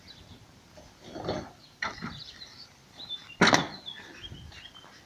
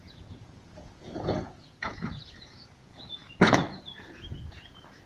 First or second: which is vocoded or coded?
second